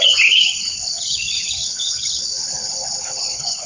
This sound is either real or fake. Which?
fake